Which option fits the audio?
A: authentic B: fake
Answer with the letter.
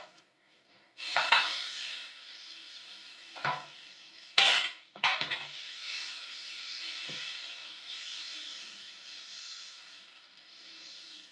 B